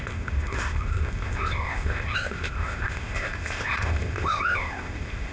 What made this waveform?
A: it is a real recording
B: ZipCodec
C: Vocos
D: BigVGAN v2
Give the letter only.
B